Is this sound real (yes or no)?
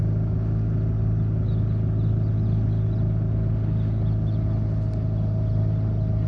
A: yes